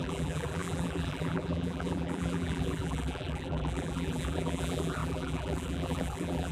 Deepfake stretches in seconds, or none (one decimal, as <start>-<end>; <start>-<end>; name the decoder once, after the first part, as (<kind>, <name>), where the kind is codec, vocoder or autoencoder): 0.0-6.5 (vocoder, BigVGAN v2)